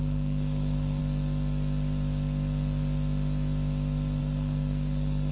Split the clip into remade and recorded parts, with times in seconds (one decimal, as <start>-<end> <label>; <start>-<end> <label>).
0.0-1.0 remade; 1.0-4.2 recorded; 4.2-5.3 remade